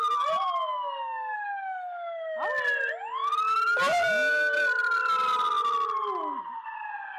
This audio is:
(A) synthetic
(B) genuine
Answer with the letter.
B